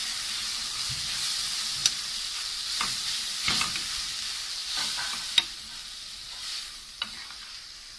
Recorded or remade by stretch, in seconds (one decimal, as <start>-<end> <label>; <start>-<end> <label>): 0.0-8.0 recorded